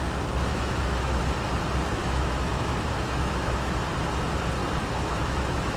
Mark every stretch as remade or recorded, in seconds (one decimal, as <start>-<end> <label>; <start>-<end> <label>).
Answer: 0.0-0.5 recorded; 0.5-1.2 remade; 1.2-2.0 recorded; 2.0-3.8 remade; 3.8-4.6 recorded; 4.6-5.8 remade